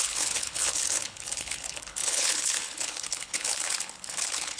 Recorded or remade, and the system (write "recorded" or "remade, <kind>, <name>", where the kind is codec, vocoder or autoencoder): remade, codec, HILCodec